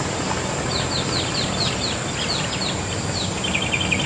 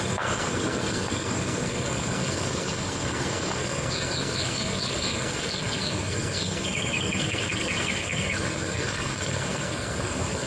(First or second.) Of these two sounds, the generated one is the second